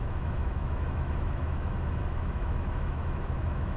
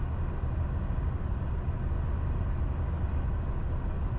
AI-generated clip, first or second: first